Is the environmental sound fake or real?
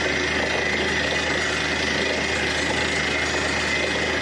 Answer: real